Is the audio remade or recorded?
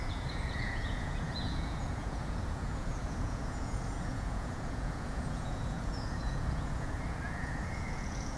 remade